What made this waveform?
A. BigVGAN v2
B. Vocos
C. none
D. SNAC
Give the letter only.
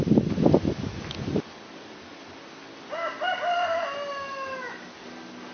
C